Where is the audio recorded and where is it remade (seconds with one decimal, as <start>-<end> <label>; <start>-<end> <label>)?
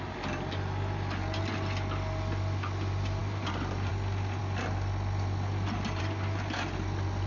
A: 0.0-7.3 recorded